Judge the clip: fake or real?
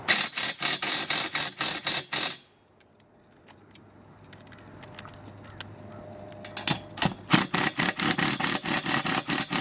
real